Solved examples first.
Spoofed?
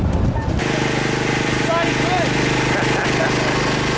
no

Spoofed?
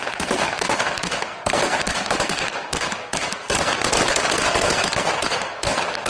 yes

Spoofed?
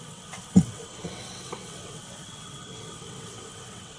yes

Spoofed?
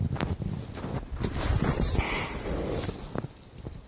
no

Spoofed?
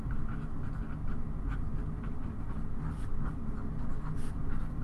no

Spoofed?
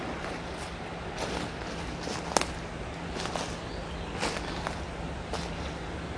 no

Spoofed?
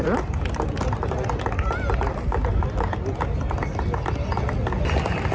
no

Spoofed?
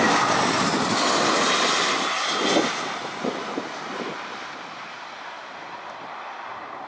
no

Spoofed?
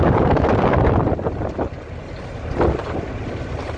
no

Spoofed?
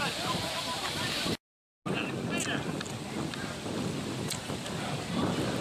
no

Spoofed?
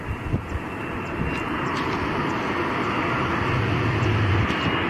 no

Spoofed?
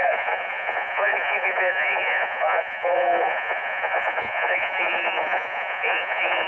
yes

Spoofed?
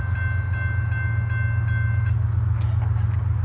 no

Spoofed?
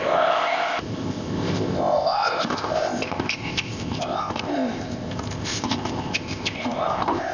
yes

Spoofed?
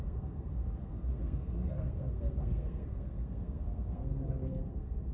yes